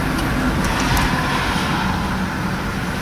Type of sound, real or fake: real